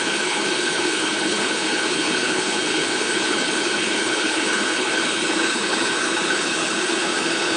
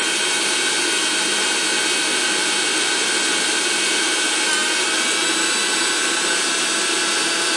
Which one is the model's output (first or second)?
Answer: first